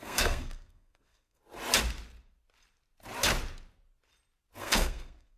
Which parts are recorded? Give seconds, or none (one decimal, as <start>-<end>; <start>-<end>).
1.4-4.6